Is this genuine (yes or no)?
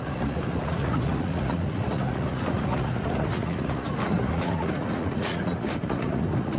no